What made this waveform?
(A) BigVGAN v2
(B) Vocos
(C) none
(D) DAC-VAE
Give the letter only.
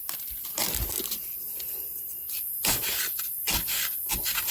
C